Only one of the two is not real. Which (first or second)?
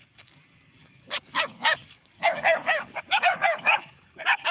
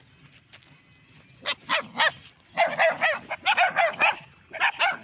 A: first